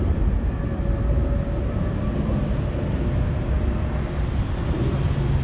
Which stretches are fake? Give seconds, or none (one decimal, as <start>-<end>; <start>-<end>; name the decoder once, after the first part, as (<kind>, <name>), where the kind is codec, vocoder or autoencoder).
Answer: none